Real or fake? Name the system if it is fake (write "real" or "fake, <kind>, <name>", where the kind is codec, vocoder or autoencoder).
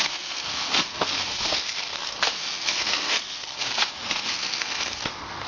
fake, codec, SNAC